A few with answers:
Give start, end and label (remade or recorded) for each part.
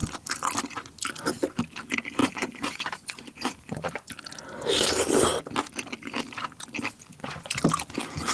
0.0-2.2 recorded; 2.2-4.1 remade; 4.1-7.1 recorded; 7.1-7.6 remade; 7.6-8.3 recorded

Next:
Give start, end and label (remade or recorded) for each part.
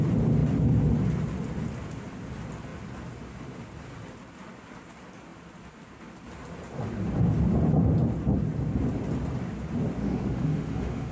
0.0-10.0 recorded; 10.0-11.1 remade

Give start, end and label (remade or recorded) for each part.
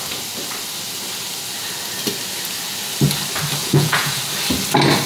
0.0-3.6 recorded; 3.6-4.2 remade; 4.2-5.1 recorded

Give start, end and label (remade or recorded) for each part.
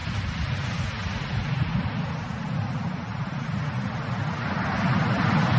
0.0-5.6 recorded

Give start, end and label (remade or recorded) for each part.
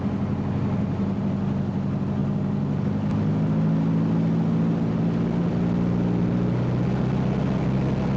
0.0-8.2 recorded